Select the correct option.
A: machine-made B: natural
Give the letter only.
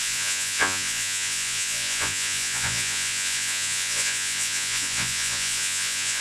A